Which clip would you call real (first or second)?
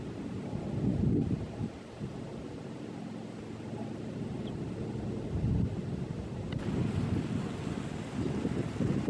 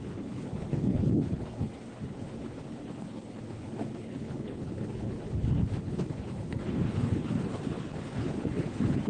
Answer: first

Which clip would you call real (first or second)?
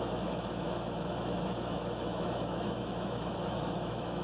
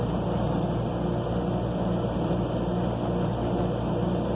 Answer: second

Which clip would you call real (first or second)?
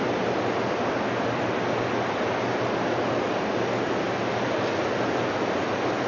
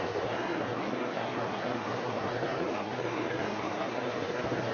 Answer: first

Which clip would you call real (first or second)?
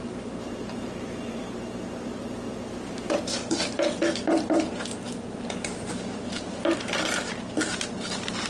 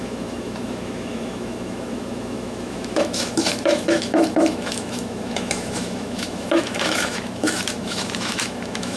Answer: first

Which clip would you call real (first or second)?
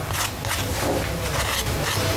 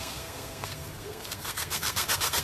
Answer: first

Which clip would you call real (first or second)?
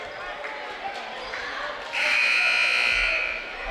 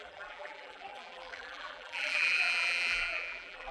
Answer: first